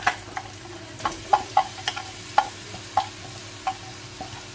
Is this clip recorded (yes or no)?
yes